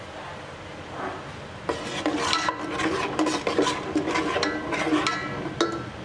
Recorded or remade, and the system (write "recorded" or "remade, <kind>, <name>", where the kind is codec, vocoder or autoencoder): recorded